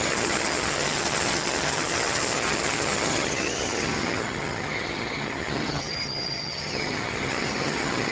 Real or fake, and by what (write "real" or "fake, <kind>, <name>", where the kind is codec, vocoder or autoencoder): fake, vocoder, HiFi-GAN